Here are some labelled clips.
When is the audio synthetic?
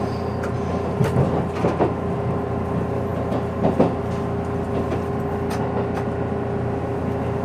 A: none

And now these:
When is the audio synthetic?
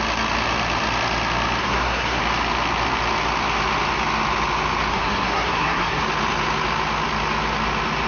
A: 1.6-2.2 (codec, SNAC); 4.9-6.0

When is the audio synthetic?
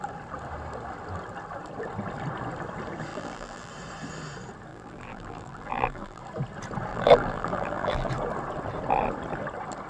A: 3.1-3.7 (vocoder, BigVGAN v2); 4.7-6.2; 6.9-8.1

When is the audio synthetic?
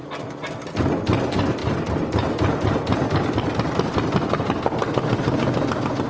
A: none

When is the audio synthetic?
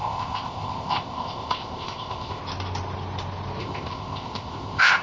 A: 0.0-2.4 (codec, ZipCodec); 3.6-5.0